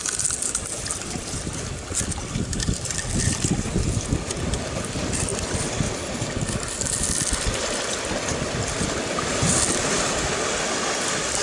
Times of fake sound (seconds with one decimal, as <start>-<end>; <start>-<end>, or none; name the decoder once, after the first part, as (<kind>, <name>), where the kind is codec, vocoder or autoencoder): none